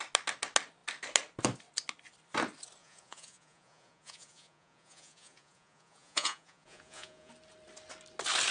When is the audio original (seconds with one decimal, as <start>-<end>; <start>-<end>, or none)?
0.0-2.8; 7.3-8.5